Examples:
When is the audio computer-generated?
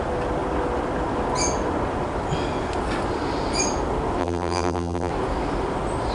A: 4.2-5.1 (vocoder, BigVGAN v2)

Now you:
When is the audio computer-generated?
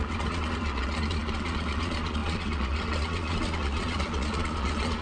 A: 0.0-5.0 (vocoder, Vocos)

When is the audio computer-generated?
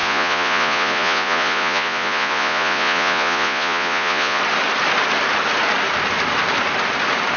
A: 0.0-4.4 (vocoder, Vocos)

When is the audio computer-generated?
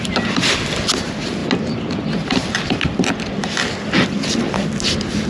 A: none